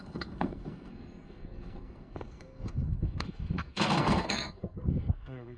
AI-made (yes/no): yes